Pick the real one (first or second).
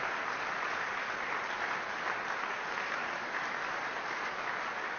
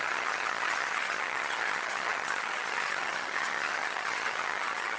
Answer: first